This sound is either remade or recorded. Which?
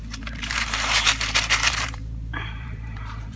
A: remade